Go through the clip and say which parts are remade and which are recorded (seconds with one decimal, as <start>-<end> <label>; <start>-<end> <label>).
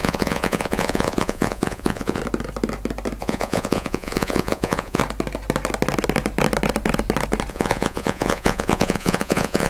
0.0-2.2 remade; 2.2-3.2 recorded; 3.2-5.0 remade; 5.0-7.5 recorded; 7.5-9.7 remade